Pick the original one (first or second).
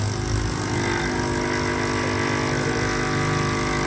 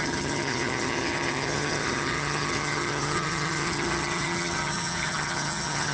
first